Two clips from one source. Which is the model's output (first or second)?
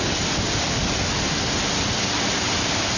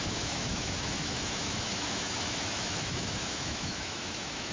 second